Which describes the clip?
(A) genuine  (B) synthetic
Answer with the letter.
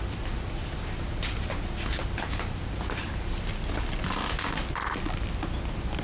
A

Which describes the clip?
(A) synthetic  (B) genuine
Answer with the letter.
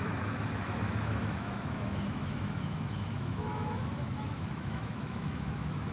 A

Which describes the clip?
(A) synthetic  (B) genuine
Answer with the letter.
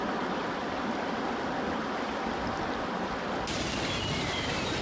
B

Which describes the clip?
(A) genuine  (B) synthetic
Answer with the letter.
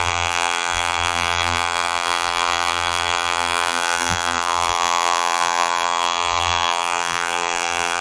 B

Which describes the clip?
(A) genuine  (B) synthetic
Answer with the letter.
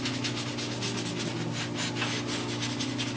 A